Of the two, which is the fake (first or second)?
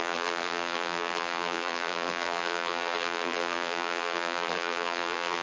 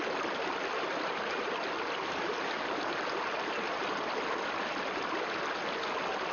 first